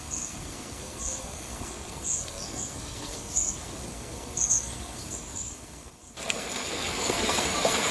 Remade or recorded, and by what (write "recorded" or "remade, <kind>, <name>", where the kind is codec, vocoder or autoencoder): remade, codec, SNAC